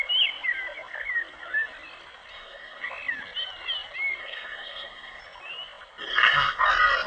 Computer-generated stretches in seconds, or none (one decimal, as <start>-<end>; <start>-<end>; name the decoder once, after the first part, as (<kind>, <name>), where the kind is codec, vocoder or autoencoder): 2.3-2.8 (codec, SNAC); 4.2-5.2; 6.1-6.6